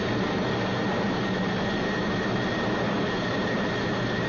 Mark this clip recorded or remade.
remade